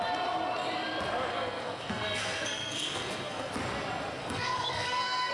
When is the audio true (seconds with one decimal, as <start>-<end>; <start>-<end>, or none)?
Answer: 0.0-1.3; 3.5-4.2